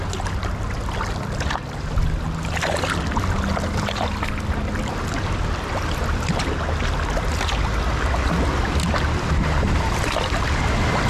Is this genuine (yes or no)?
yes